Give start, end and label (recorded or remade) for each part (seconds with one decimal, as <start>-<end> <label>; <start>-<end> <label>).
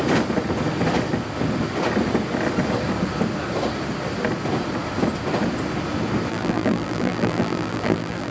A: 0.0-6.3 recorded; 6.3-8.3 remade